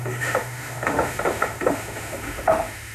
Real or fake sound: fake